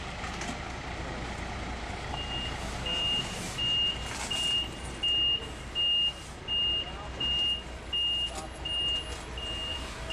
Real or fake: real